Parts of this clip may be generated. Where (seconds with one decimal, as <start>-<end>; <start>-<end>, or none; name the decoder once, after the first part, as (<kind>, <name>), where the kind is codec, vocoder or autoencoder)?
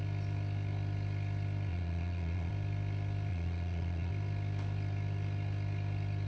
1.7-2.5 (vocoder, Vocos); 3.3-4.1